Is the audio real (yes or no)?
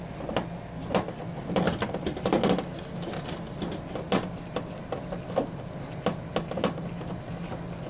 yes